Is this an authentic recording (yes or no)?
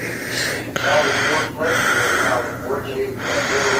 yes